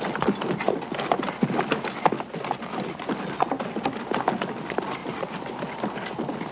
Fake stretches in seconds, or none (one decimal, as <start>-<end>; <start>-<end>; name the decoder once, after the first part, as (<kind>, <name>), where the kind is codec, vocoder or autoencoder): 5.0-5.5 (vocoder, BigVGAN v2)